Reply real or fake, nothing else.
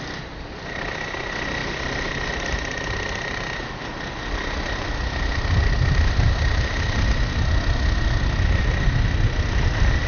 real